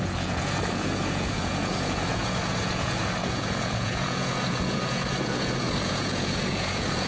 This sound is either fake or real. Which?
fake